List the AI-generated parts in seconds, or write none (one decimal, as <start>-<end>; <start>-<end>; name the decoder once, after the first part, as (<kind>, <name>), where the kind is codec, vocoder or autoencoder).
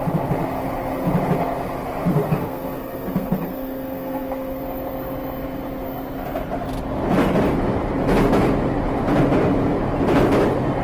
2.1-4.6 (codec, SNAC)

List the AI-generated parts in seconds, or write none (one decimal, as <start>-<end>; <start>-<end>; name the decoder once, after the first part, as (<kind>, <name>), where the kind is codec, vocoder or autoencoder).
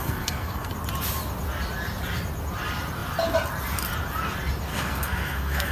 0.0-0.7 (codec, SNAC); 4.7-5.7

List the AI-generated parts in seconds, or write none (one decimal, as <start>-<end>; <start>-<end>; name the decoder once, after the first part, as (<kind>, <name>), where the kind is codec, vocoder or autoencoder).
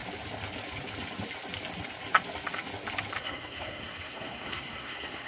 3.2-5.3 (codec, SNAC)